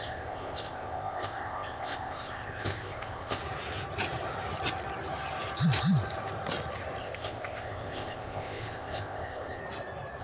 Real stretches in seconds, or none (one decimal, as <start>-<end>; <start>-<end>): 3.4-7.0; 9.6-10.2